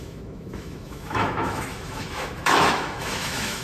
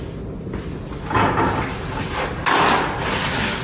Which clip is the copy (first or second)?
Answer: first